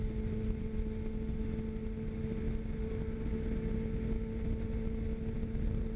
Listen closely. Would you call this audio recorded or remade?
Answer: recorded